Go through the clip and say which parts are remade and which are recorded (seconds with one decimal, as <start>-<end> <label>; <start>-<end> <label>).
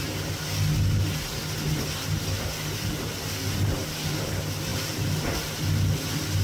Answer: 0.0-6.4 recorded